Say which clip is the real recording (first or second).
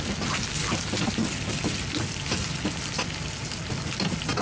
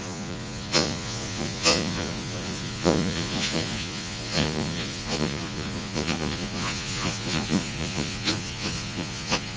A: first